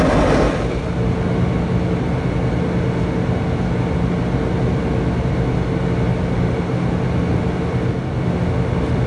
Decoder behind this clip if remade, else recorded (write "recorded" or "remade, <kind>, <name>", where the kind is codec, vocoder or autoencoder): recorded